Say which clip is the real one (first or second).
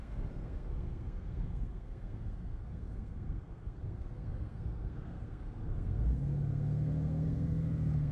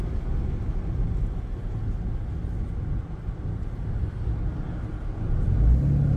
second